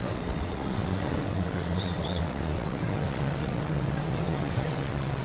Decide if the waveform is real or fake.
fake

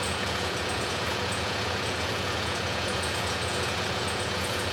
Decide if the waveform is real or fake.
fake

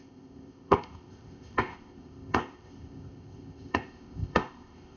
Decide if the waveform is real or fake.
fake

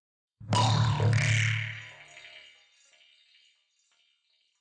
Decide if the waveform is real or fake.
real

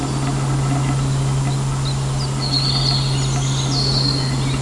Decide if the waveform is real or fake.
real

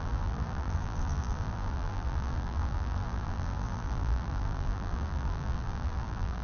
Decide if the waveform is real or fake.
fake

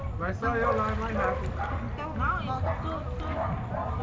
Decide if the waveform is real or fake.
real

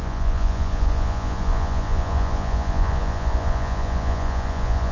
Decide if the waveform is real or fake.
fake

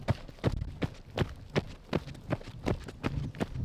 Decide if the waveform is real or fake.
real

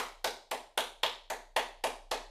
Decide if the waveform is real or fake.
real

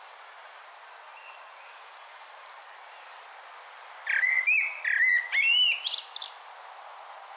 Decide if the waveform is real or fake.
real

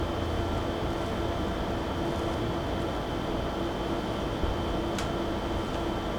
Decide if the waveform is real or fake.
real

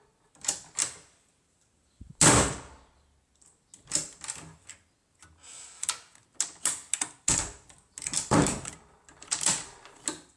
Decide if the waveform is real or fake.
real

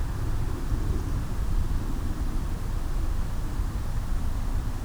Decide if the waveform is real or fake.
fake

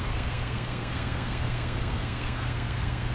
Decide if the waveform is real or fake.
fake